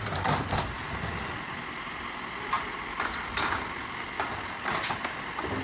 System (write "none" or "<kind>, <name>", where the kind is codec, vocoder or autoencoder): none